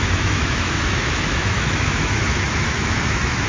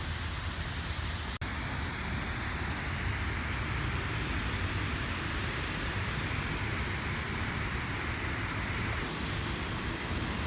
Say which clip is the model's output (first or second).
first